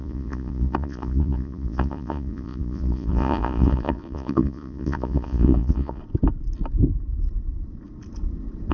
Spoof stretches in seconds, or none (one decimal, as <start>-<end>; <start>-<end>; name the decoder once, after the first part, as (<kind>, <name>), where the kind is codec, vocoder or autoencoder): 0.0-6.0 (vocoder, Vocos)